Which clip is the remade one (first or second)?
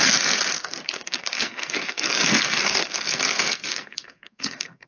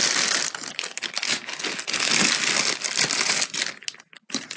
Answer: first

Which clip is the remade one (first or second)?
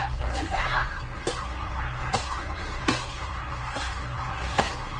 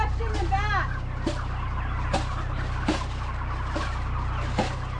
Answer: first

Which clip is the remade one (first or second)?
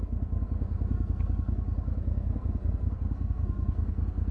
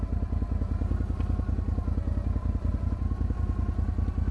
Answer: first